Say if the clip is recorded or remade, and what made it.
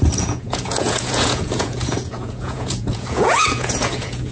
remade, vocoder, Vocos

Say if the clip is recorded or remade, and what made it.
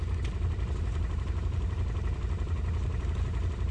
recorded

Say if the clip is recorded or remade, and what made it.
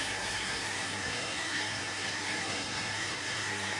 remade, codec, SNAC